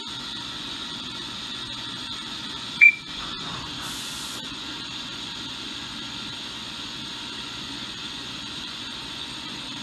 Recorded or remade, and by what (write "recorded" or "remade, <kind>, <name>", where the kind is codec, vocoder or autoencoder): remade, vocoder, Vocos